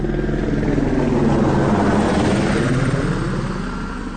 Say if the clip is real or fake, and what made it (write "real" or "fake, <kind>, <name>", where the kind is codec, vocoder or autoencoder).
real